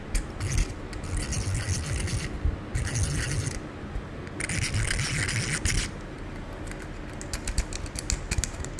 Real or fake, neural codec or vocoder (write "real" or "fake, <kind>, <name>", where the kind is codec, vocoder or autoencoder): real